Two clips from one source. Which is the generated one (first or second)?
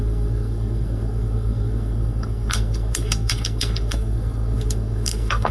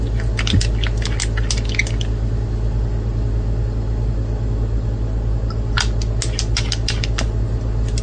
first